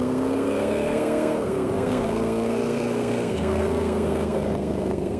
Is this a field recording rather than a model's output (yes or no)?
no